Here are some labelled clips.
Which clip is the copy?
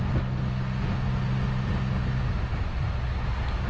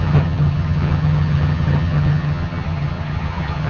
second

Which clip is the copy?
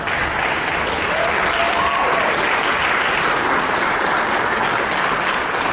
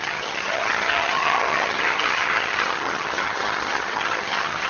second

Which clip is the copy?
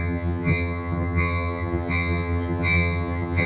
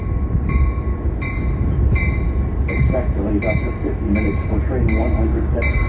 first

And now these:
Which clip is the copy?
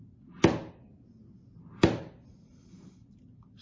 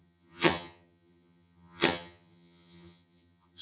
second